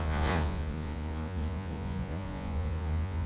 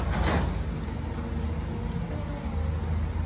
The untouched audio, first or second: second